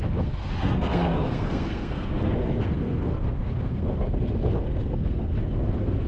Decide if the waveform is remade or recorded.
remade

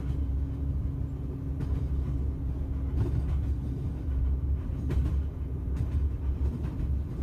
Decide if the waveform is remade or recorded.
recorded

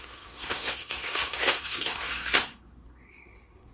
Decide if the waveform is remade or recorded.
remade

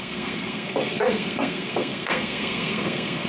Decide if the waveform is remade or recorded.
remade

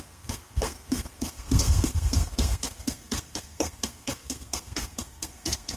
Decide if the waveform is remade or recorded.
remade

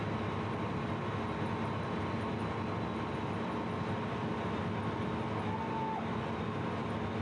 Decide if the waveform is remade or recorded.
recorded